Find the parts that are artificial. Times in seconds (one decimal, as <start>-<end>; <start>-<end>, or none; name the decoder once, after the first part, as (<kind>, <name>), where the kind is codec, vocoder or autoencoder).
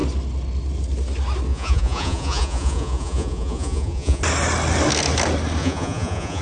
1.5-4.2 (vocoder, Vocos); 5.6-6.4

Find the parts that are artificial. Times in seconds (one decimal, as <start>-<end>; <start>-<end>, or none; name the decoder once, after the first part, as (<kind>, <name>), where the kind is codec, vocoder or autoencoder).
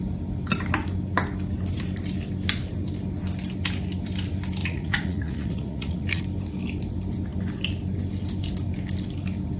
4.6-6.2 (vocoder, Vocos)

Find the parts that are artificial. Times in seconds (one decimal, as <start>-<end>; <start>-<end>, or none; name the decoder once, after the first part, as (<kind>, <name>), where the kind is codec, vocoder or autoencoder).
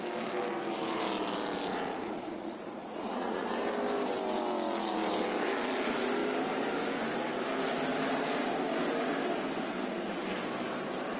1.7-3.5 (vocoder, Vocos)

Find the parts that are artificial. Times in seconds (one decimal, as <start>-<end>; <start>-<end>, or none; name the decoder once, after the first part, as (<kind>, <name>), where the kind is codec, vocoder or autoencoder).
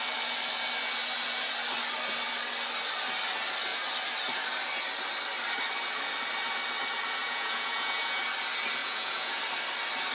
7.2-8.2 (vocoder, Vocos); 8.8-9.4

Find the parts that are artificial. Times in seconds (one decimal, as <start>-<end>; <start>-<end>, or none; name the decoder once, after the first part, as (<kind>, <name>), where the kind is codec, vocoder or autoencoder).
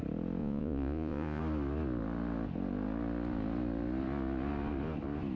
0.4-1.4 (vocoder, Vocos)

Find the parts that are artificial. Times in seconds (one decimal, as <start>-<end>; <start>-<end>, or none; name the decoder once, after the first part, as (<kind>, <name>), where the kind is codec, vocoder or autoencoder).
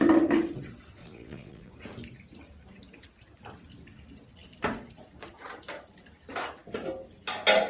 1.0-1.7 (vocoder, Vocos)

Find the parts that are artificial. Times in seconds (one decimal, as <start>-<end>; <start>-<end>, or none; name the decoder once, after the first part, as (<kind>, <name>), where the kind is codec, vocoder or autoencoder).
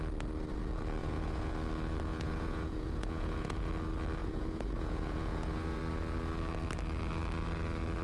1.0-1.5 (vocoder, Vocos); 2.1-3.7; 4.2-5.8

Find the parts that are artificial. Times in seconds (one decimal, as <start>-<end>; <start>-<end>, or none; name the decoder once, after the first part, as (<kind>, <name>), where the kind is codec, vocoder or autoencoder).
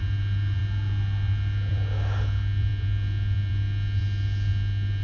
none